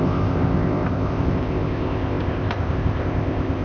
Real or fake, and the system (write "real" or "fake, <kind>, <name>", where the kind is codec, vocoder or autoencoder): fake, codec, ZipCodec